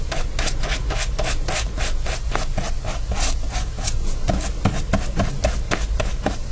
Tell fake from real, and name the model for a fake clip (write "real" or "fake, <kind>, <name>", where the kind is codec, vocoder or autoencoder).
real